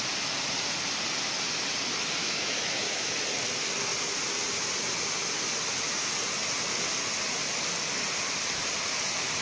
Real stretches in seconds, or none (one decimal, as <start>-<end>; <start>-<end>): 0.0-2.2; 3.1-9.4